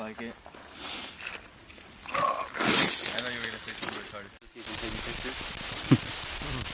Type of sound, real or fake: real